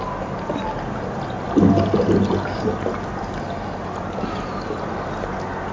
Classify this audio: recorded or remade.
recorded